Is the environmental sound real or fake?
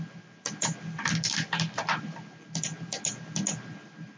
real